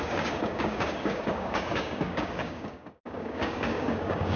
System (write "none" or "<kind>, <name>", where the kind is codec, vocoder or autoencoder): codec, DAC